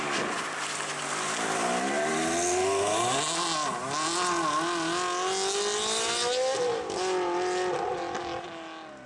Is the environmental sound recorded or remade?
recorded